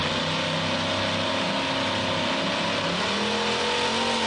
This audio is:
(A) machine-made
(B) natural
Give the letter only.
B